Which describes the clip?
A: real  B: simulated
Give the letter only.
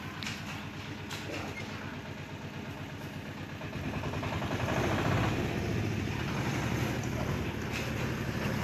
A